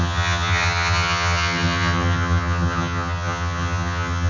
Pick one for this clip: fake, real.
fake